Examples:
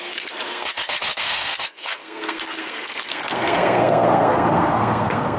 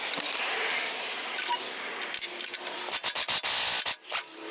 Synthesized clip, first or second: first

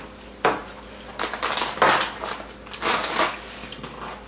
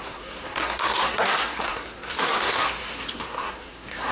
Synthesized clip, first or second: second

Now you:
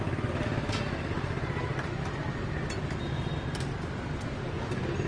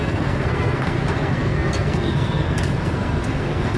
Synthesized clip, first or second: second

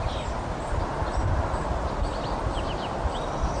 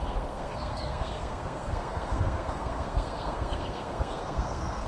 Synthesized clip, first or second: second